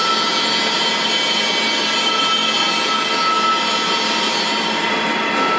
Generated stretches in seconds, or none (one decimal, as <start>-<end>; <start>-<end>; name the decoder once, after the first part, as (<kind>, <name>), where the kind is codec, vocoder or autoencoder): none

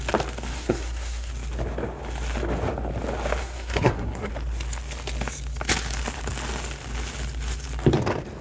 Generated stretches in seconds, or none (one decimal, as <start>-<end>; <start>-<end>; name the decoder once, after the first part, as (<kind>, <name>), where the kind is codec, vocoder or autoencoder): 0.5-1.3 (codec, SNAC); 3.4-4.3

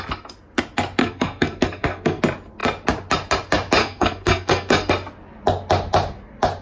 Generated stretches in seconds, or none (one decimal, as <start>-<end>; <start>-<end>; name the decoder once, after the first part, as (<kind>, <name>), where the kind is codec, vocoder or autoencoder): 1.0-2.2 (codec, SNAC); 3.8-4.9

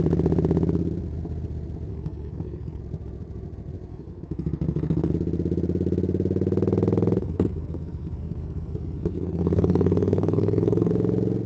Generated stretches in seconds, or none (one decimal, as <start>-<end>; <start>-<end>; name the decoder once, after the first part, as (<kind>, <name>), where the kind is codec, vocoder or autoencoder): 1.9-2.8 (codec, SNAC); 3.9-5.1; 7.2-10.9

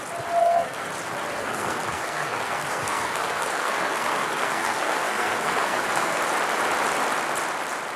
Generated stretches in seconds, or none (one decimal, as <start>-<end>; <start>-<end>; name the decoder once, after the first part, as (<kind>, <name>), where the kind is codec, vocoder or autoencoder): 0.4-0.9 (codec, SNAC); 1.4-6.2

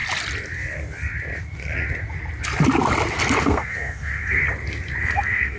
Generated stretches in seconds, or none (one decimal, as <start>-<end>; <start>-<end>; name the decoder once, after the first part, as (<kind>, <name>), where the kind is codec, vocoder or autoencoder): 3.4-4.4 (codec, SNAC); 5.0-5.6

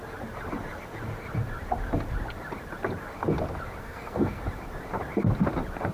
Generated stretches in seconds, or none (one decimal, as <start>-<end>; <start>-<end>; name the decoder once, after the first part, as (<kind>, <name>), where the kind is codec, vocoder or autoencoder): 3.8-4.4 (codec, SNAC)